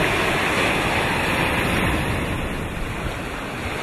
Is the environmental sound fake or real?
real